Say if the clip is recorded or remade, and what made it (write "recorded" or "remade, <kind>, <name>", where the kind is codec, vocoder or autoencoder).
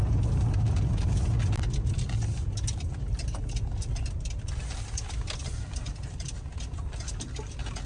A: recorded